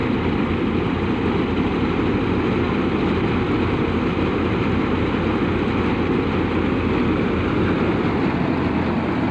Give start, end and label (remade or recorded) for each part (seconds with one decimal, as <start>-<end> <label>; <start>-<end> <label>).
0.0-0.8 remade; 0.8-9.3 recorded